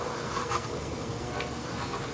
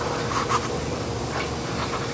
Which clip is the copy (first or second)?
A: first